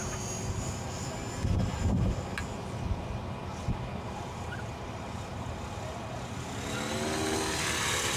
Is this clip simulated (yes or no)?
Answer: no